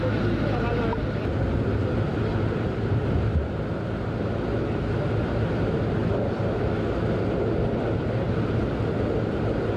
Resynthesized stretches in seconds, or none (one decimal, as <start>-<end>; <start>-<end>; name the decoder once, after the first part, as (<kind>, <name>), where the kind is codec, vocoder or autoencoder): none